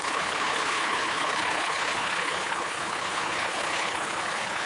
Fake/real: fake